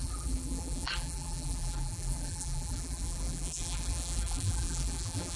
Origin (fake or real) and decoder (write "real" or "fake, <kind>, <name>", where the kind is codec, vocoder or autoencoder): fake, vocoder, BigVGAN v2